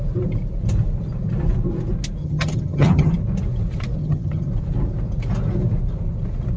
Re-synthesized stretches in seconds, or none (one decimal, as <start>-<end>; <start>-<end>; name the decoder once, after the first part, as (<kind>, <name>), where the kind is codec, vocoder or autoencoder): 2.2-3.1 (vocoder, HiFi-GAN); 4.0-4.5